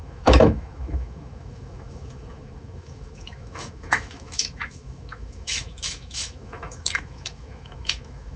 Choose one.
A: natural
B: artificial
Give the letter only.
B